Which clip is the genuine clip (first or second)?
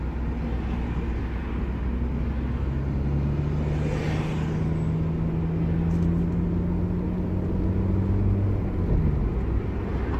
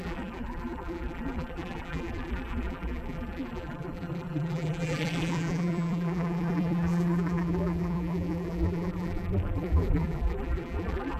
first